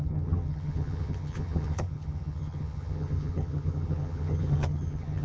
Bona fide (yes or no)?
no